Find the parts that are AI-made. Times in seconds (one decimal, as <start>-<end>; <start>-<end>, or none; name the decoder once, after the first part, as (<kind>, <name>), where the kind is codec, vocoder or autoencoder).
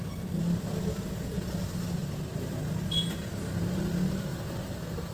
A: 4.3-5.1 (vocoder, BigVGAN v2)